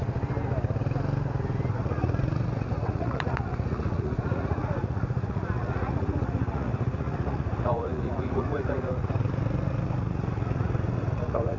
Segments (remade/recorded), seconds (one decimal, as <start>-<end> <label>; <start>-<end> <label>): 0.0-1.7 recorded; 1.7-11.6 remade